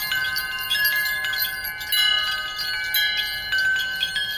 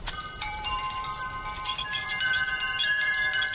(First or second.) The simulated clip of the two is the second